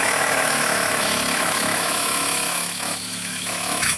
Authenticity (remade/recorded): remade